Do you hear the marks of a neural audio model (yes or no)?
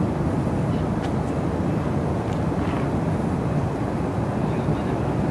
no